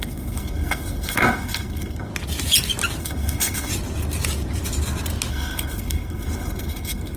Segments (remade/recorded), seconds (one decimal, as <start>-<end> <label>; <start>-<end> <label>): 0.0-2.1 remade; 2.1-3.0 recorded; 3.0-3.7 remade; 3.7-5.3 recorded; 5.3-7.2 remade